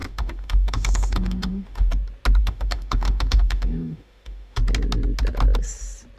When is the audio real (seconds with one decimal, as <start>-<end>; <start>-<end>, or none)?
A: 1.9-2.4; 4.6-6.2